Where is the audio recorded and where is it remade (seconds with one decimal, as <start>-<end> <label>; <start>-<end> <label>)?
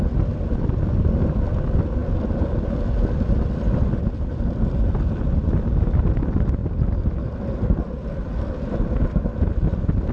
0.0-6.6 recorded; 6.6-7.8 remade; 7.8-10.1 recorded